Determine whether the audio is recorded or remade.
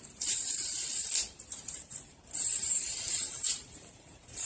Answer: remade